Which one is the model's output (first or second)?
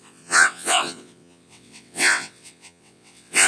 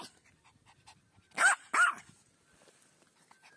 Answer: first